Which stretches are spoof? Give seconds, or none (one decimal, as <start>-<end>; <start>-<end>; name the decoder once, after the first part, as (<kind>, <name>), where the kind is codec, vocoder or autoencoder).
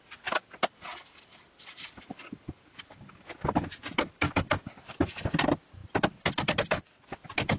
none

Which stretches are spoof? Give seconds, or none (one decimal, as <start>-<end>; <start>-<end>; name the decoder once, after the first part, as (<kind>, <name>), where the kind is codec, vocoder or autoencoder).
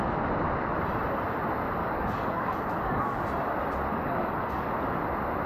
1.8-3.2 (codec, DAC); 3.9-4.7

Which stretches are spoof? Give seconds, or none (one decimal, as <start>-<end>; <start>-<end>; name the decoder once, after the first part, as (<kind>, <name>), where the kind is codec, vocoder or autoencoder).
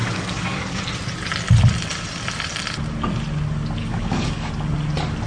0.0-0.8 (codec, DAC); 3.8-4.5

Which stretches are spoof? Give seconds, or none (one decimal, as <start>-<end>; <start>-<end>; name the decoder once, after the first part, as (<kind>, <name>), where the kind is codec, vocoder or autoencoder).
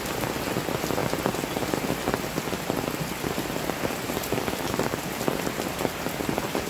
none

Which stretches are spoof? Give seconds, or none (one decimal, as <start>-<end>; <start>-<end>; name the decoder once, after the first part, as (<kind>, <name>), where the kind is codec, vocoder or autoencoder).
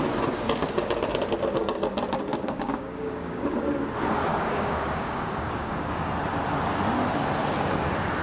2.3-3.8 (codec, DAC); 4.3-6.1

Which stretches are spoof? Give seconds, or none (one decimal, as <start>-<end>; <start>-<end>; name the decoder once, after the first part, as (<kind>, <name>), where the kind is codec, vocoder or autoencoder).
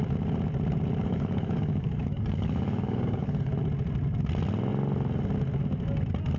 1.0-3.5 (codec, DAC)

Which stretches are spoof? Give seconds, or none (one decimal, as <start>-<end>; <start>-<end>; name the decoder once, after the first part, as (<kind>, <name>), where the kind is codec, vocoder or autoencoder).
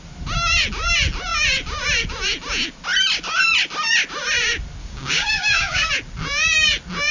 4.8-5.9 (codec, DAC)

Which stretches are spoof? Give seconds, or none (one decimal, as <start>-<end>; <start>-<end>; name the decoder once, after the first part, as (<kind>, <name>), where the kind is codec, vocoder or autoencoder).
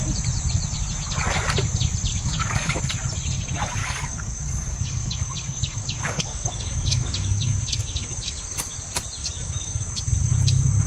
2.1-2.8 (codec, DAC); 3.8-8.4; 9.2-10.0